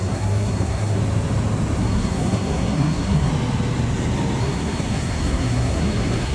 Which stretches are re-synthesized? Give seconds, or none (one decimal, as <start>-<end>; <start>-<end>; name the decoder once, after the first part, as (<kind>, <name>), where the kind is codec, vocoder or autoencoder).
0.0-1.0 (codec, SNAC); 1.8-3.3; 4.4-6.3